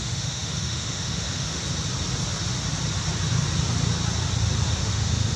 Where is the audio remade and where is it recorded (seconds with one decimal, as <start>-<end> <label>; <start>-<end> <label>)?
0.0-1.6 remade; 1.6-4.8 recorded; 4.8-5.4 remade